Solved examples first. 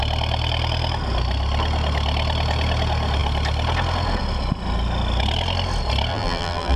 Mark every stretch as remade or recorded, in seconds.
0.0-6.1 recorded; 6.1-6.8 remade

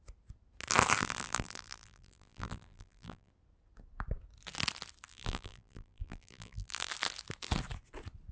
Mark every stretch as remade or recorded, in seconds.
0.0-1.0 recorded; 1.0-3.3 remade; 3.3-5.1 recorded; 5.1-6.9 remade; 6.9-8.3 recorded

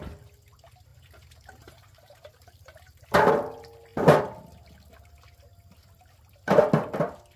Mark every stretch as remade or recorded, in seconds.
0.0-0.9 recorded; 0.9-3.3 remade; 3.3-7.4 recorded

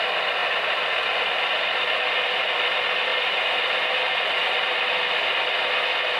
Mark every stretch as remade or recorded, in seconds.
0.0-3.1 recorded; 3.1-4.5 remade; 4.5-6.2 recorded